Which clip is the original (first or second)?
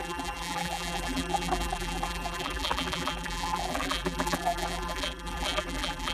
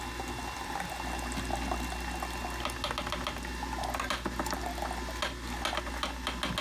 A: second